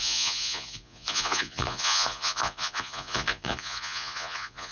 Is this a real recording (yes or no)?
no